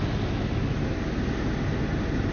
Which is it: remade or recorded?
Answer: recorded